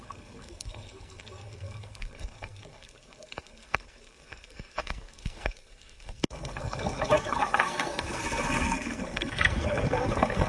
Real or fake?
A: fake